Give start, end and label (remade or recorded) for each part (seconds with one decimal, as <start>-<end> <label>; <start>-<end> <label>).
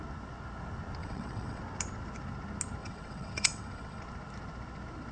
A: 0.0-1.0 recorded; 1.0-1.6 remade; 1.6-2.8 recorded; 2.8-4.0 remade; 4.0-5.1 recorded